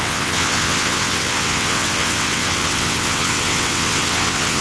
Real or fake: fake